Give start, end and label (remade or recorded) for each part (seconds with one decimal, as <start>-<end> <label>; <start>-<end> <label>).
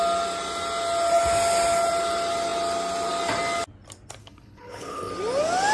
0.0-4.2 recorded; 4.2-5.1 remade; 5.1-5.7 recorded